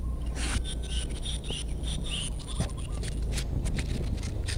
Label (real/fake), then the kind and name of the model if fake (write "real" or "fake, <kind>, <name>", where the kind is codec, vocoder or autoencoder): real